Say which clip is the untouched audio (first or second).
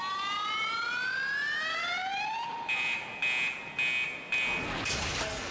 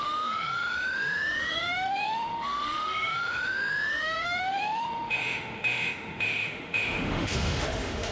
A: first